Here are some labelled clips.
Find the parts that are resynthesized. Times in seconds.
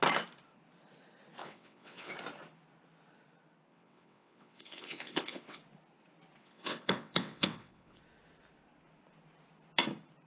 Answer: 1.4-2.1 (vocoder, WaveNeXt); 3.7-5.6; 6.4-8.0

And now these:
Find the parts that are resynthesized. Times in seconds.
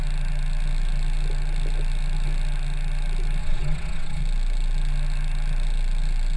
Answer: 3.4-4.2 (vocoder, WaveNeXt)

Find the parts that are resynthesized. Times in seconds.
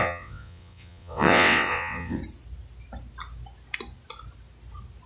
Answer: 0.0-2.2 (vocoder, WaveNeXt)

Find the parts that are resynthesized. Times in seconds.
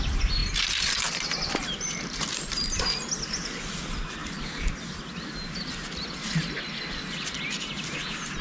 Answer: none